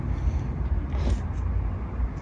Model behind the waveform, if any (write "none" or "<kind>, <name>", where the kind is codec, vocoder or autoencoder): none